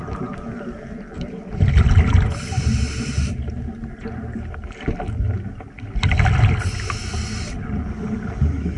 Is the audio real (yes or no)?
yes